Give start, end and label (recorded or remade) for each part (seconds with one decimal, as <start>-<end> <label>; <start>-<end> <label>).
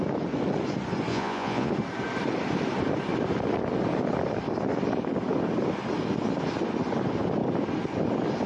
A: 0.0-1.1 recorded; 1.1-1.7 remade; 1.7-8.5 recorded